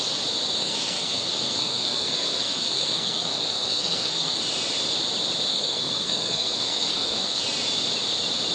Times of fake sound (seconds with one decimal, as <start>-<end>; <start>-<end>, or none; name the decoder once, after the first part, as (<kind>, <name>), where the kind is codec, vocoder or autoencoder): 0.6-4.4 (codec, SNAC); 5.5-7.4